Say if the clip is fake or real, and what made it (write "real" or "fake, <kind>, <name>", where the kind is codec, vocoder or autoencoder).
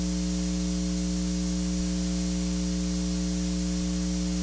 real